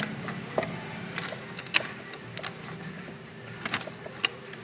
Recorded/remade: recorded